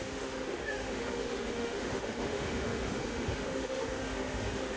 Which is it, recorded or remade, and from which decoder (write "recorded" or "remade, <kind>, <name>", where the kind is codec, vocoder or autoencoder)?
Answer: remade, autoencoder, DAC-VAE